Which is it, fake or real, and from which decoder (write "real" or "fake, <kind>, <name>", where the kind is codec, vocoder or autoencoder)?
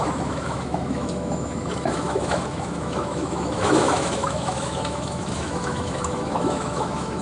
fake, autoencoder, DAC-VAE